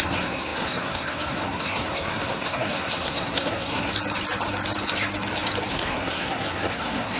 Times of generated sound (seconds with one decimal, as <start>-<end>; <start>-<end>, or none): 0.0-3.9; 5.7-7.2